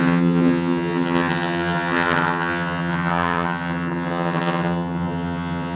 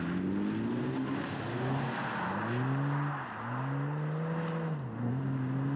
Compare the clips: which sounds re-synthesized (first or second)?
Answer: first